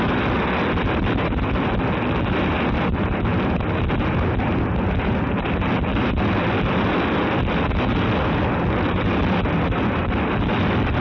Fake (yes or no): no